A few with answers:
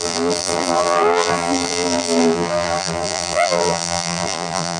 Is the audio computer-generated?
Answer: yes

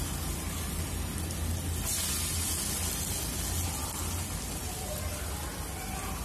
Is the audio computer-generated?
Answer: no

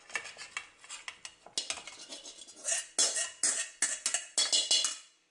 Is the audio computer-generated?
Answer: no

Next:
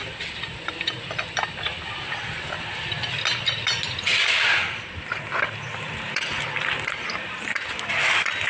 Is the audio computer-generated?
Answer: yes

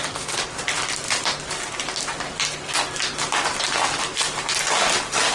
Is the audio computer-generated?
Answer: no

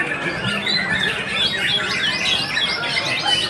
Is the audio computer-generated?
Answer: no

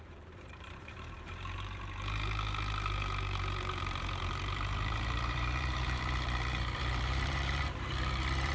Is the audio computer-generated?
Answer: yes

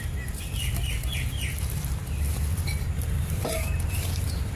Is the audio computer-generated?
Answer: yes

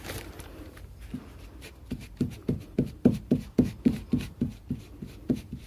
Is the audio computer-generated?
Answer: yes